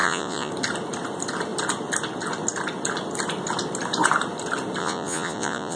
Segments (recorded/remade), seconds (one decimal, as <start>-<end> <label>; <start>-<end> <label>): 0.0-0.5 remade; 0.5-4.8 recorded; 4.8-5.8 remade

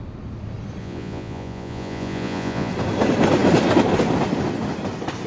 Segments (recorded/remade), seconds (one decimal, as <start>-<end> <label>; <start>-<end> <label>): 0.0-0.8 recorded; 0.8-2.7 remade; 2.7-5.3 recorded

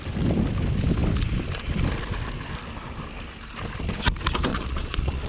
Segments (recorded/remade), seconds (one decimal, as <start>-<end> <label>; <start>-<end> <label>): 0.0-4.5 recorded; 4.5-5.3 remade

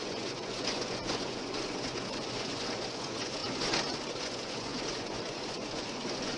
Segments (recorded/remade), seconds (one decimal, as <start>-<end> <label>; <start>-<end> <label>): 0.0-6.4 remade

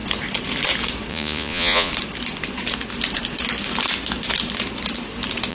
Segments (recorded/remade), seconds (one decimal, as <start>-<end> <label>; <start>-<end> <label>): 0.0-1.1 recorded; 1.1-1.9 remade; 1.9-5.5 recorded